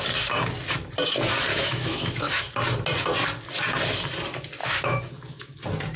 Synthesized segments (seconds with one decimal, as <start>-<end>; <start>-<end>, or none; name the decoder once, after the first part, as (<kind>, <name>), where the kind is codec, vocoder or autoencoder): 1.5-2.4 (autoencoder, DAC-VAE); 4.6-5.6